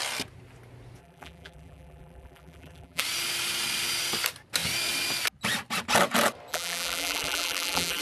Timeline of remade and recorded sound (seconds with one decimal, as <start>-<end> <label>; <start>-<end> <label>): 0.0-1.0 recorded; 1.0-3.0 remade; 3.0-6.5 recorded; 6.5-8.0 remade